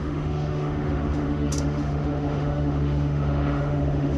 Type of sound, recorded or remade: remade